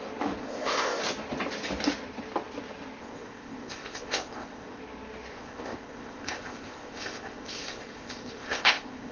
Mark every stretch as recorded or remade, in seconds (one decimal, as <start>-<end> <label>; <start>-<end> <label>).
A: 0.0-0.4 recorded; 0.4-1.0 remade; 1.0-3.0 recorded; 3.0-4.8 remade; 4.8-5.3 recorded; 5.3-9.1 remade